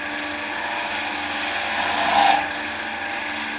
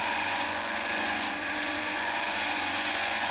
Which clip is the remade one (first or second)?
second